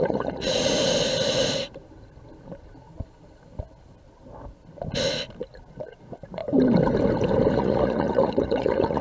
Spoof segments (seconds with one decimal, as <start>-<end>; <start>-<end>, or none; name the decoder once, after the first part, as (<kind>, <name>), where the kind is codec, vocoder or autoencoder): 0.0-0.8 (vocoder, Vocos); 5.9-6.4; 7.5-9.0